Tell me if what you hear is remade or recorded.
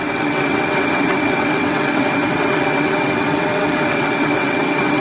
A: remade